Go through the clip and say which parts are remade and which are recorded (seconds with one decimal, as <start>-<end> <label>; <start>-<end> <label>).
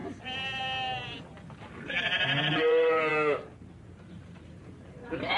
0.0-2.4 recorded; 2.4-3.1 remade; 3.1-4.1 recorded; 4.1-5.4 remade